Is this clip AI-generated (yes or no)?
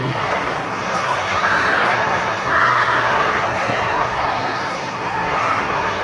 yes